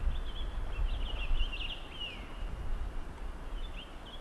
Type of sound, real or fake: real